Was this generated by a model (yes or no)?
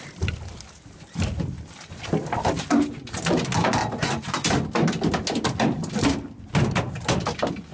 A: no